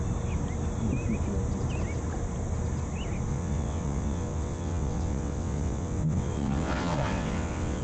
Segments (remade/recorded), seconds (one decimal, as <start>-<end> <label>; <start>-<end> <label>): 0.0-3.3 recorded; 3.3-7.8 remade